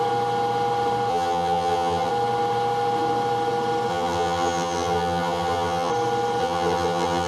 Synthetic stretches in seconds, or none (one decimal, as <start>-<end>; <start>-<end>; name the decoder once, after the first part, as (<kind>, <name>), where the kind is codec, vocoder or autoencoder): 1.1-2.1 (vocoder, BigVGAN v2); 3.9-5.9; 6.4-7.3

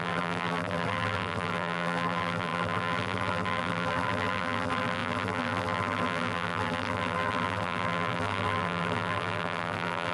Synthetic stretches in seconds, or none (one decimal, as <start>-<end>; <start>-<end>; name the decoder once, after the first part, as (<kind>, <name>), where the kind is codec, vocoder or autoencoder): 0.0-10.1 (vocoder, BigVGAN v2)

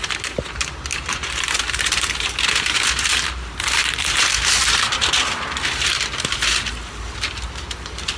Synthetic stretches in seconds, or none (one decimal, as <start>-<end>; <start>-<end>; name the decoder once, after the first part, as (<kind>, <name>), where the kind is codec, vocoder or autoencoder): 0.9-5.1 (vocoder, BigVGAN v2)